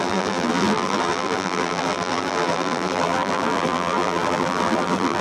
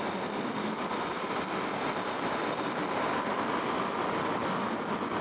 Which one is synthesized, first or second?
first